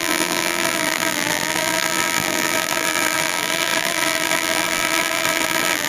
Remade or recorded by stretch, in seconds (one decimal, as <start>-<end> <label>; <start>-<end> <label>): 0.0-5.9 remade